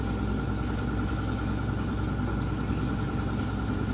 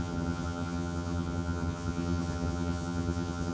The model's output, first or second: second